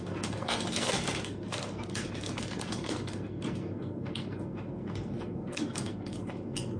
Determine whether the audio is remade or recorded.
remade